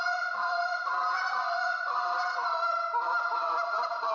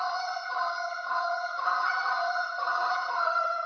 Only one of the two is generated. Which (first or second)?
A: second